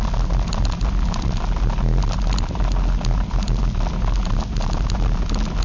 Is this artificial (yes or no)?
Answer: no